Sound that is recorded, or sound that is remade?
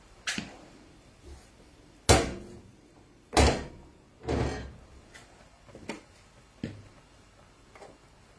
recorded